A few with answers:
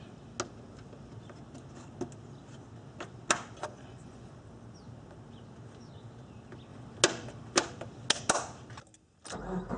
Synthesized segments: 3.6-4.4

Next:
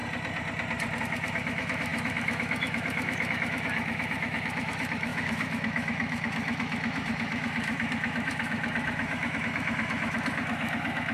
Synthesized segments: 1.0-11.1

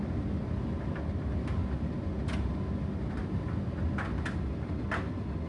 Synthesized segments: none

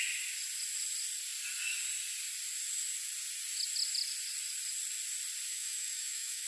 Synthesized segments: 5.5-6.5

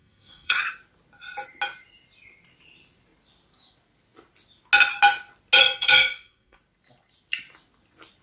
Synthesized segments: 0.0-0.6; 5.6-6.6

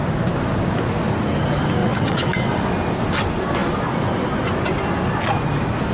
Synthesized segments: 1.8-2.6